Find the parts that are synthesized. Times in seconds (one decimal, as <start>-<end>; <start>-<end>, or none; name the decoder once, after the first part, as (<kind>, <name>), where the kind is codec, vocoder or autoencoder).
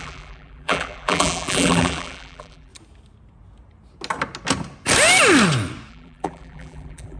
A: 0.0-2.7 (vocoder, BigVGAN v2); 5.9-7.2